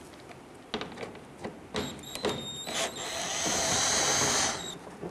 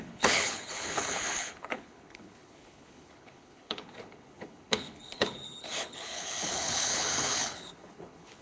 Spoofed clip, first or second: second